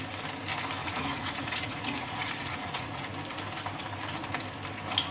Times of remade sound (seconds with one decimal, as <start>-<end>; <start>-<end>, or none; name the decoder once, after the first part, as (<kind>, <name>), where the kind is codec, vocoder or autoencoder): 0.8-3.1 (vocoder, Vocos)